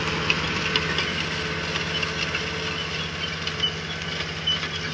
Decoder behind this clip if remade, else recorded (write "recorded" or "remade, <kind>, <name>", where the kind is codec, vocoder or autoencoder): recorded